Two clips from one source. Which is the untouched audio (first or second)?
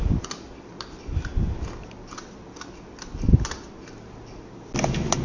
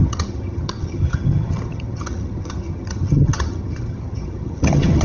first